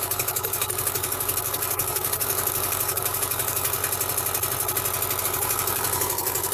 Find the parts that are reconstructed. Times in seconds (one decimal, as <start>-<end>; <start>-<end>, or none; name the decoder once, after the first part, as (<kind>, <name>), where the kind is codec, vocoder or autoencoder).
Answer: 0.0-3.8 (codec, DAC); 5.2-6.5